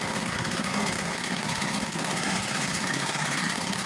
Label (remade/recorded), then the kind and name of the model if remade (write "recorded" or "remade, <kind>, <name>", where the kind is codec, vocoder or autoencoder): remade, codec, SNAC